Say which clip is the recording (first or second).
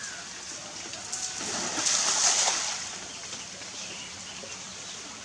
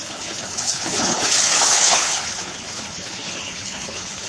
first